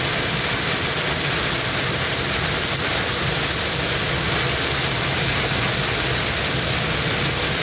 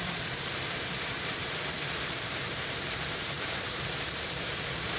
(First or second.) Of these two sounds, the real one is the first